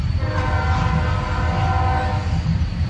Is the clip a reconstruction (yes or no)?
no